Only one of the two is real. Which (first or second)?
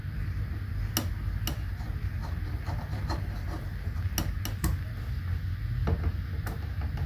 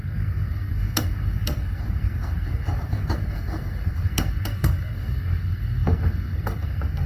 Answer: first